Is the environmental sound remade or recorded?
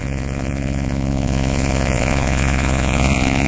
remade